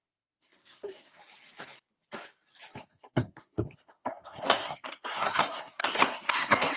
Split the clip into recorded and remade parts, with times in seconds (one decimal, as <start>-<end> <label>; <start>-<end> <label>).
0.0-1.2 remade; 1.2-2.8 recorded; 2.8-6.8 remade